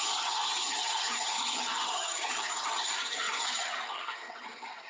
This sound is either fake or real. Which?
fake